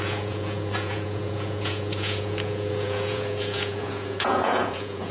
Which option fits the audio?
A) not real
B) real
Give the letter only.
A